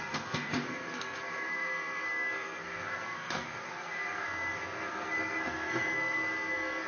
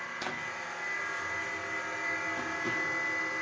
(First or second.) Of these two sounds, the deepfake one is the first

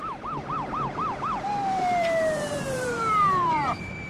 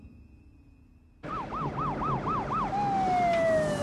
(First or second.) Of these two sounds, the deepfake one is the first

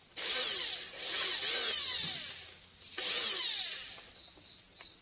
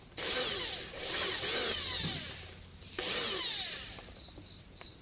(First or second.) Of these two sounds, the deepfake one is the second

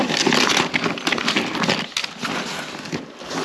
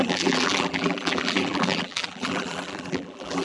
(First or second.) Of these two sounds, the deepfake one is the second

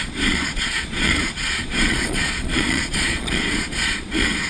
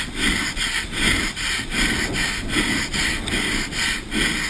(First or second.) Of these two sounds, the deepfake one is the first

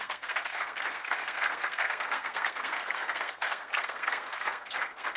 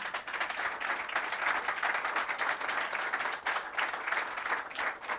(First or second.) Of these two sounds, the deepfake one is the first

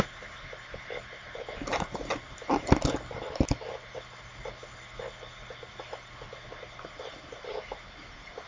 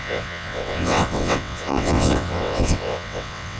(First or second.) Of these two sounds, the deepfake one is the second